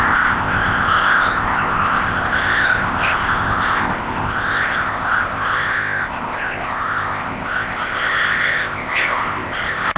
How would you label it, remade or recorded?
remade